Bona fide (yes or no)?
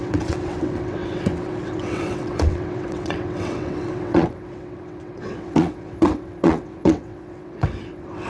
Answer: no